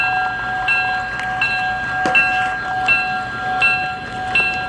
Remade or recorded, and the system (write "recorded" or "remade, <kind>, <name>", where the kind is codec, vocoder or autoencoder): recorded